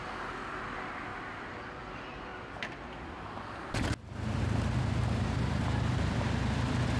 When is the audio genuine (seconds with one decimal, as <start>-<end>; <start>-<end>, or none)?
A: 2.3-4.4